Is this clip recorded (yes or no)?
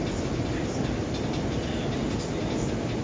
yes